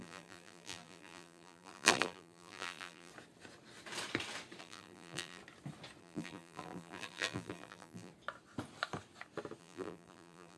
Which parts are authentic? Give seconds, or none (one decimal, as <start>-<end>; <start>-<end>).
3.1-4.6; 5.4-6.0; 8.1-9.6